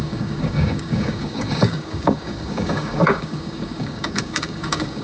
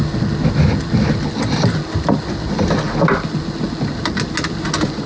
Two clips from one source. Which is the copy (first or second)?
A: first